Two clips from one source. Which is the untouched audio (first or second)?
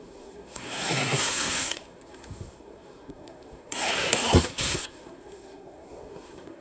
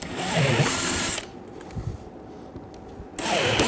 second